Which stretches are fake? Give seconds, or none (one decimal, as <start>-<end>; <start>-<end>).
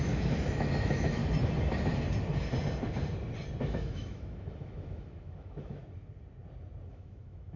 0.0-1.2; 3.6-5.8; 6.9-7.6